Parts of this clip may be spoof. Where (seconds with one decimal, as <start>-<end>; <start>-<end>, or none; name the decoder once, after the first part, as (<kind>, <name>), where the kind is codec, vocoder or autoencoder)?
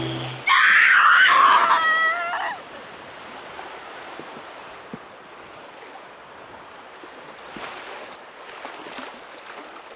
none